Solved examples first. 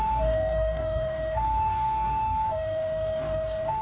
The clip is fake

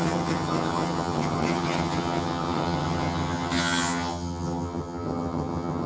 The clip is fake